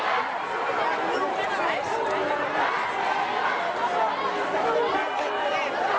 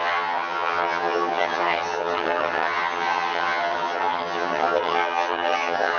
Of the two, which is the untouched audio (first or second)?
first